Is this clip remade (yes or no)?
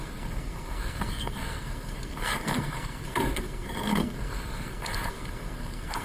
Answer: yes